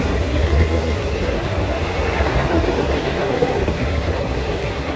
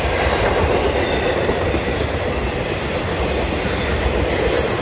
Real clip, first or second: second